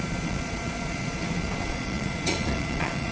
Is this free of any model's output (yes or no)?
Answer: no